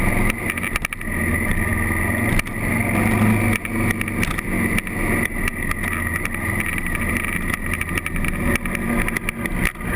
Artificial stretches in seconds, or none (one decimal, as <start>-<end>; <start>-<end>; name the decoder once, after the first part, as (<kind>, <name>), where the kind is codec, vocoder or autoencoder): none